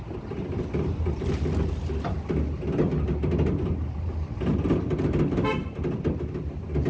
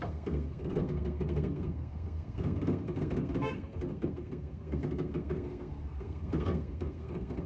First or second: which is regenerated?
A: second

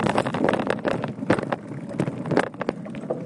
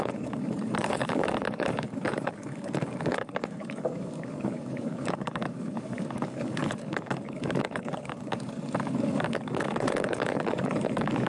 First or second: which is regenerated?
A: second